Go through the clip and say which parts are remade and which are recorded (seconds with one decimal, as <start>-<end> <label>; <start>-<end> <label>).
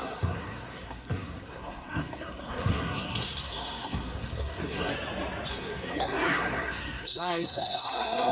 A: 0.0-4.9 remade; 4.9-5.5 recorded; 5.5-8.3 remade